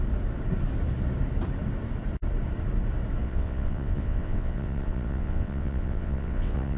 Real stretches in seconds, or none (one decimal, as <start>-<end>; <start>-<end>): 0.0-3.2